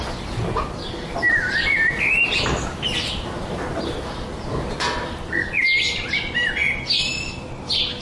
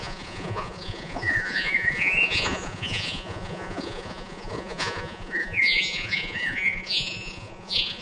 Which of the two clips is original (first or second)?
first